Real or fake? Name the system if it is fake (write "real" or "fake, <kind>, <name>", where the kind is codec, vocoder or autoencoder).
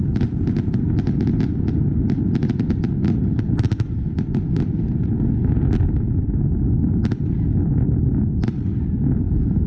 real